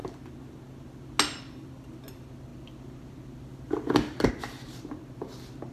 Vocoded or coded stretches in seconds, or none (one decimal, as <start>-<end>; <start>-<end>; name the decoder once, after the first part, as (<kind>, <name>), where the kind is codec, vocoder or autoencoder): none